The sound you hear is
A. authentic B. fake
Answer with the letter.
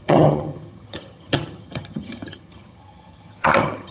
B